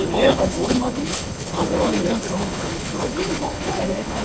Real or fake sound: fake